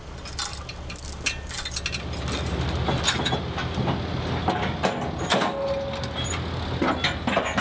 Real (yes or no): yes